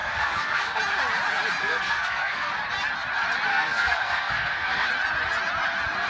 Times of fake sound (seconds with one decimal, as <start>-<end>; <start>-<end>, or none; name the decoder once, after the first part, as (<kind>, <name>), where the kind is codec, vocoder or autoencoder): 0.0-0.8 (codec, SNAC); 1.6-2.5; 3.5-4.9